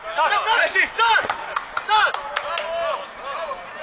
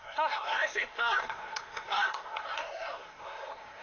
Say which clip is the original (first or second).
first